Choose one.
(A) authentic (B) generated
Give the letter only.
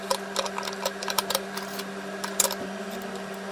B